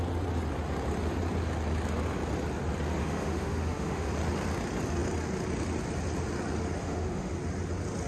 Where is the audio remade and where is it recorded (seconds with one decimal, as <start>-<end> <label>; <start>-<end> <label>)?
0.0-3.0 recorded; 3.0-4.1 remade; 4.1-6.8 recorded; 6.8-7.3 remade; 7.3-8.1 recorded